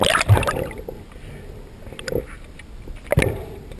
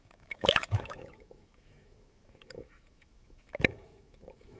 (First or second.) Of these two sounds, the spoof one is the second